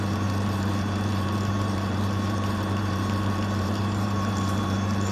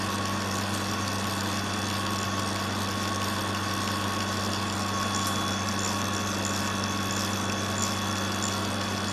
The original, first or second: second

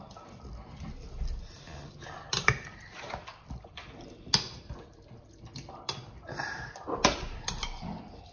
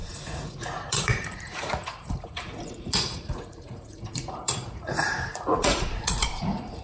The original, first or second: first